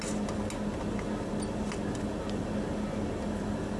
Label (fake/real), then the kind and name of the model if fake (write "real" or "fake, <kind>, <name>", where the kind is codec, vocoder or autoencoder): real